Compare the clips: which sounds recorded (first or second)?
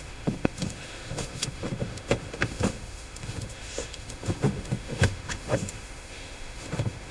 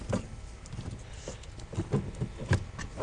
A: second